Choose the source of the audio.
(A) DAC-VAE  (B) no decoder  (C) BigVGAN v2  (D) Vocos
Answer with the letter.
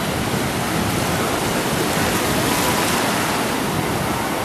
B